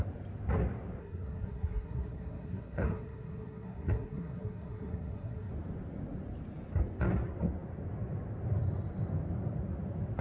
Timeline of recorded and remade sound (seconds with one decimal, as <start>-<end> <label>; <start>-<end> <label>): 0.0-1.0 recorded; 1.0-5.5 remade; 5.5-10.2 recorded